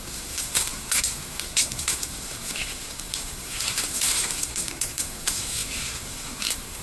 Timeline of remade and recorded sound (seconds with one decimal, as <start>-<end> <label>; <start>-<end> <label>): 0.0-6.8 remade